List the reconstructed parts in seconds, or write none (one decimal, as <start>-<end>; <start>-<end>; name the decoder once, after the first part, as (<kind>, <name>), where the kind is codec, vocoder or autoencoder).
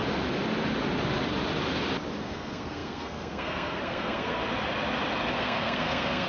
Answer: 2.2-4.4 (codec, SNAC); 5.3-6.3